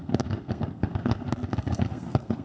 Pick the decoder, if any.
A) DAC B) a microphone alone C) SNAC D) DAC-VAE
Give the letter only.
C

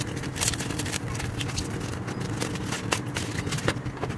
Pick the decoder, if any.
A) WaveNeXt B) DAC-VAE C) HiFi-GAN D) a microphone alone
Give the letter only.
D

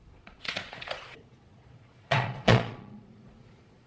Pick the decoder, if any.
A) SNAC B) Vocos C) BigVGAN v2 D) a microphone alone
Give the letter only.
B